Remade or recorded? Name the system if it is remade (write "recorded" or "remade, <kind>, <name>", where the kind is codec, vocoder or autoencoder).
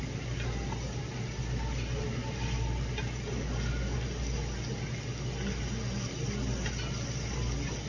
recorded